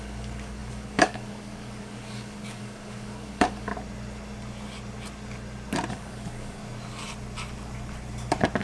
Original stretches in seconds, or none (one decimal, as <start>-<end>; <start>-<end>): 3.7-5.9; 6.6-8.6